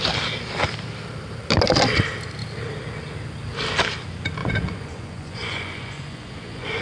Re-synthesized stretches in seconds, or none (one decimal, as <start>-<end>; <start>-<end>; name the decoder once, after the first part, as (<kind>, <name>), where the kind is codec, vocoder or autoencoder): 4.4-6.8 (vocoder, Vocos)